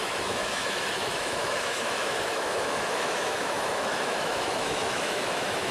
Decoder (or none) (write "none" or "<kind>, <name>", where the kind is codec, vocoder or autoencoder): autoencoder, DAC-VAE